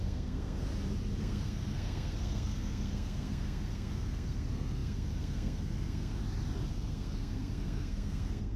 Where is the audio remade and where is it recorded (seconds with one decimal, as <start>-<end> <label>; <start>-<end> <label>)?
0.0-0.7 remade; 0.7-1.2 recorded; 1.2-6.2 remade; 6.2-6.7 recorded; 6.7-8.6 remade